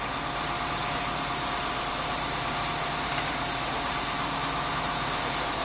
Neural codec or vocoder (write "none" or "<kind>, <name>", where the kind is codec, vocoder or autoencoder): none